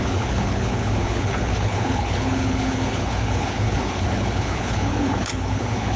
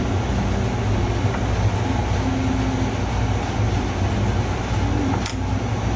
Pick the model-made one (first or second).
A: first